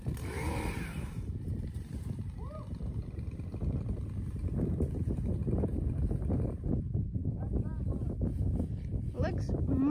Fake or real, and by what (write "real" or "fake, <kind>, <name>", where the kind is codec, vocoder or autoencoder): fake, vocoder, BigVGAN v2